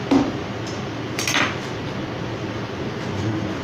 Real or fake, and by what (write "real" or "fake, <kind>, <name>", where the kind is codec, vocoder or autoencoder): real